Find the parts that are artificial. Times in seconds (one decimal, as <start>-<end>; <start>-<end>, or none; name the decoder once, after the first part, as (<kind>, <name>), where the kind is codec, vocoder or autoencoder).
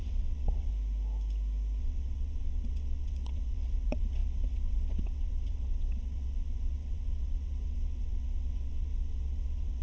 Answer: 0.0-0.7 (vocoder, WaveNeXt); 1.8-9.8